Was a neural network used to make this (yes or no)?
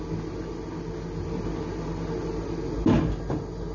no